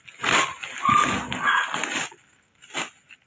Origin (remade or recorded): recorded